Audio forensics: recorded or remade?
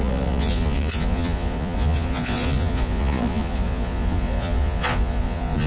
remade